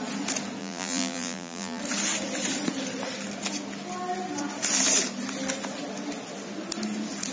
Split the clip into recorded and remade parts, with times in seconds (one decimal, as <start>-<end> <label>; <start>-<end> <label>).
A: 0.0-0.6 recorded; 0.6-1.8 remade; 1.8-7.3 recorded